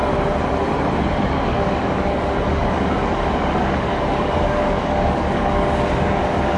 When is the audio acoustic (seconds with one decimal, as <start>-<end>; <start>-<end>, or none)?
0.0-1.2